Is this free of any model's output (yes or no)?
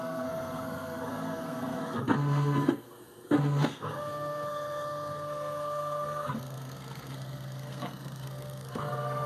no